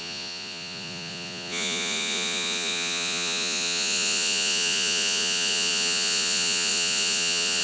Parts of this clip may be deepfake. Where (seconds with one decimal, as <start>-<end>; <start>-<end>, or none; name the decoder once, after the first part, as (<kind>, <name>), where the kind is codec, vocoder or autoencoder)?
0.0-7.6 (vocoder, Vocos)